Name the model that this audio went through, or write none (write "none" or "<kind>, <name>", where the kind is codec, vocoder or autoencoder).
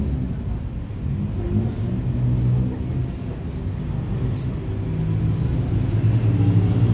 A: none